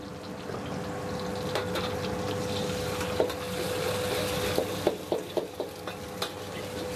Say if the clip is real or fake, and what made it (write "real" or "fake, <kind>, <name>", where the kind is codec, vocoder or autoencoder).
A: real